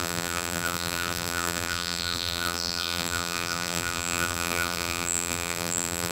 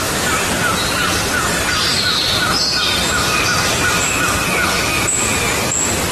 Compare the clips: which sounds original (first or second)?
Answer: second